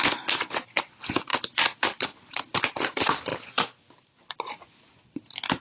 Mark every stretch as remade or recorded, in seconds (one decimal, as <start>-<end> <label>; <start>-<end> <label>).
0.0-1.3 recorded; 1.3-2.5 remade; 2.5-3.3 recorded; 3.3-4.1 remade; 4.1-5.6 recorded